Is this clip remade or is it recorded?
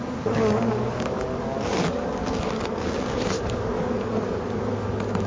remade